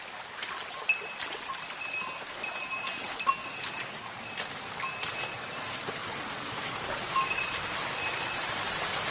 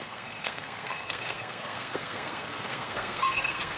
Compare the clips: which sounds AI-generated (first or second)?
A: second